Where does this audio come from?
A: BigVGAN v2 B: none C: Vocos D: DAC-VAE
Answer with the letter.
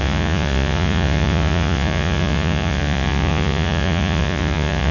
C